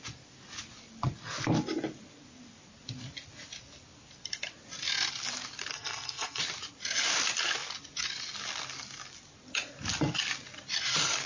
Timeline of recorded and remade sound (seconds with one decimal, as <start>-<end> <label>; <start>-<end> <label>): 0.0-5.7 recorded; 5.7-6.4 remade; 6.4-11.3 recorded